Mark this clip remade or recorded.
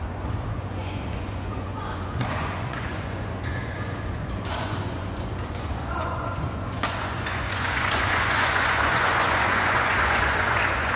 remade